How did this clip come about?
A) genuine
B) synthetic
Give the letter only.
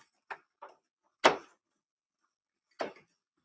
A